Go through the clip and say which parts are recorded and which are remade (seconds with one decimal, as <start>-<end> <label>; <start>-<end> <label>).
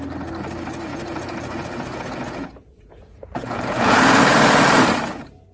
0.0-0.9 recorded; 0.9-4.2 remade; 4.2-5.5 recorded